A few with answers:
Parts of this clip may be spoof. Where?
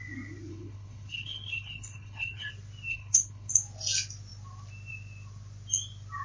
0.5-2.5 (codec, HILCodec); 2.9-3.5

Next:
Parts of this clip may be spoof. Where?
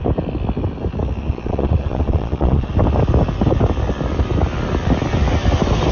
1.2-2.7 (vocoder, Vocos)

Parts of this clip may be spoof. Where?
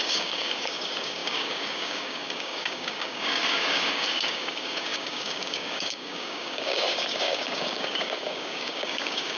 0.0-9.4 (codec, DAC)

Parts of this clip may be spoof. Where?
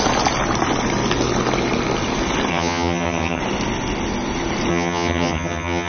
2.5-3.4 (vocoder, HiFi-GAN); 4.7-5.9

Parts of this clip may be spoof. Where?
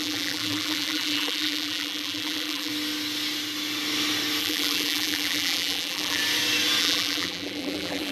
0.0-2.7 (vocoder, BigVGAN v2); 4.4-6.2; 6.8-8.1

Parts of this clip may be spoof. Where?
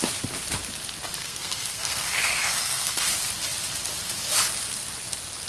1.2-3.0 (codec, SNAC)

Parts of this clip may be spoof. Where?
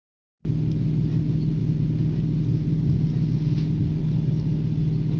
none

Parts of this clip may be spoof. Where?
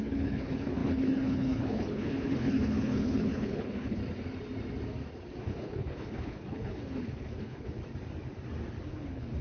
0.0-4.0 (codec, HILCodec); 5.4-7.8; 8.9-9.4